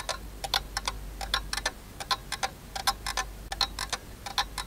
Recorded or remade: recorded